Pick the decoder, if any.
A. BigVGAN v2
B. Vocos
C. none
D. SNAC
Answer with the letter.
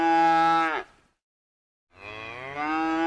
C